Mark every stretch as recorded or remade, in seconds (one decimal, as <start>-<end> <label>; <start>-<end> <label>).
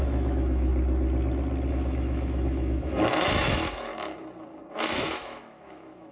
0.0-0.7 remade; 0.7-1.7 recorded; 1.7-3.9 remade; 3.9-4.7 recorded; 4.7-6.1 remade